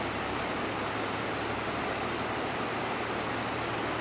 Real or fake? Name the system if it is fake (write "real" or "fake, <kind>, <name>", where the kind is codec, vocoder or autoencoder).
real